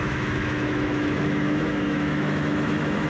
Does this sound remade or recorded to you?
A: remade